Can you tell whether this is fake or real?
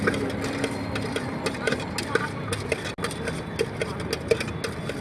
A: real